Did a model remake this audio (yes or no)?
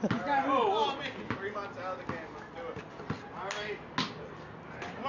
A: no